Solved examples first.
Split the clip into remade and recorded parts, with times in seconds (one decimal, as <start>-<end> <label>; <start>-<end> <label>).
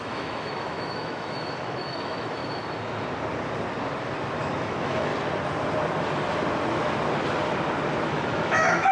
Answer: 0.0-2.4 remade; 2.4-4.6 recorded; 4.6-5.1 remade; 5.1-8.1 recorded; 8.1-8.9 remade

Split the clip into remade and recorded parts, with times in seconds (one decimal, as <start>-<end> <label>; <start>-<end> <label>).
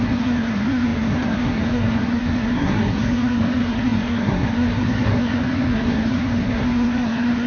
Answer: 0.0-7.5 remade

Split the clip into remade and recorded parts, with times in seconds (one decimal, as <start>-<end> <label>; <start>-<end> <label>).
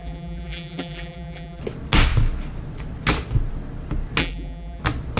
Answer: 0.0-1.6 remade; 1.6-4.2 recorded; 4.2-4.8 remade; 4.8-5.2 recorded